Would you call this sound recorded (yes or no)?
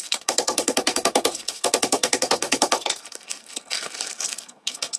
no